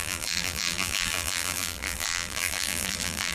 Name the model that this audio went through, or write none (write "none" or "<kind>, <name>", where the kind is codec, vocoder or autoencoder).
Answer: vocoder, BigVGAN v2